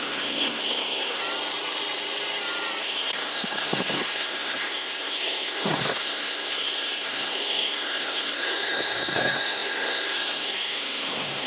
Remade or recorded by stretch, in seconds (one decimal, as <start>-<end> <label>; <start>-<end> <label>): 0.0-1.2 remade; 1.2-2.8 recorded; 2.8-11.5 remade